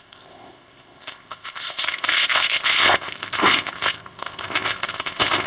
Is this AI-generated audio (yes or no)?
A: yes